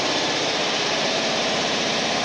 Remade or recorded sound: remade